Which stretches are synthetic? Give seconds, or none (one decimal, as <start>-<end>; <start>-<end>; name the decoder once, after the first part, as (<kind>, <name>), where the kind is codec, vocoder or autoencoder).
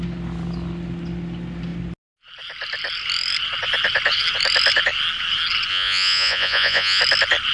5.7-7.0 (vocoder, Vocos)